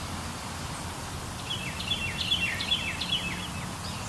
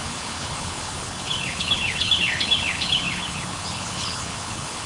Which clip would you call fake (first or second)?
second